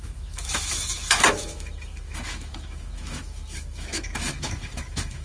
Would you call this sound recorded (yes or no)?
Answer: no